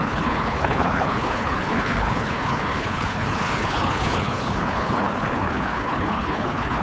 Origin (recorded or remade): remade